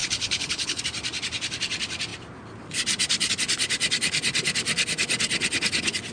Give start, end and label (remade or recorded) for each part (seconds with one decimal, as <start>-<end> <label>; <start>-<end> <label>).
0.0-0.8 remade; 0.8-6.1 recorded